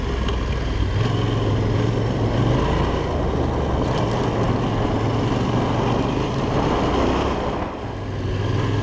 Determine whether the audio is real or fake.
real